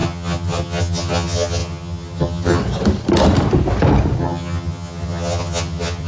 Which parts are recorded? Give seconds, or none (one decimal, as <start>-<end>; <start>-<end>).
2.6-4.2